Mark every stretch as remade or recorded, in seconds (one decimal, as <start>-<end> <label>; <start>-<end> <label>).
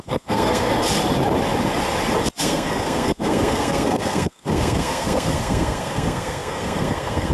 0.0-0.7 remade; 0.7-2.4 recorded; 2.4-7.3 remade